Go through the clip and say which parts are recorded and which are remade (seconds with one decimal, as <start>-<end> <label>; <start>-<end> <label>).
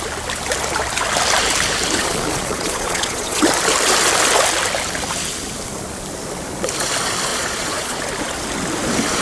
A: 0.0-2.0 recorded; 2.0-3.5 remade; 3.5-7.3 recorded; 7.3-8.0 remade; 8.0-9.2 recorded